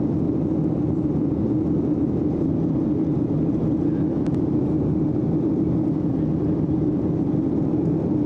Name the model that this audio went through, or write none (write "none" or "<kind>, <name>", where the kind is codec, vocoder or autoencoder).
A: none